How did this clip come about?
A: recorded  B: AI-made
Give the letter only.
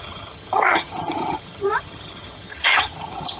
B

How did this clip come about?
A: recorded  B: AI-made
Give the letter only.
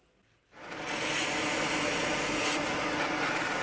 A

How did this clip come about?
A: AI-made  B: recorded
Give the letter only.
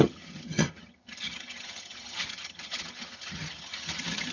A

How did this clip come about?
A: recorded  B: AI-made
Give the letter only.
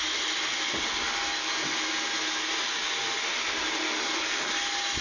A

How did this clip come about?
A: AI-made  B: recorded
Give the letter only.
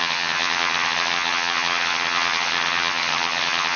A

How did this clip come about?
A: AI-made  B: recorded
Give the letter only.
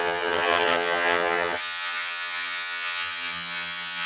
A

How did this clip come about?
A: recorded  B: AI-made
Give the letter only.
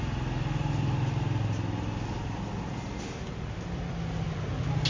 A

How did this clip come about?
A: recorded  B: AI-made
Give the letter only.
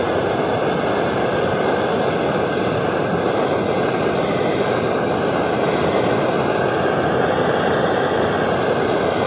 A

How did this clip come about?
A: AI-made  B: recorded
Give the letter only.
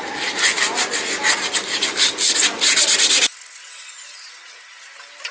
B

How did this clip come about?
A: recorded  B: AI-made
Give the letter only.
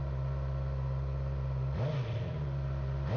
A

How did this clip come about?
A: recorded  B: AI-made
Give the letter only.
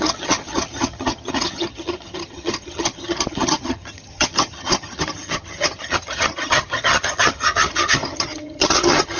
B